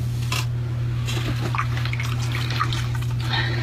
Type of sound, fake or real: real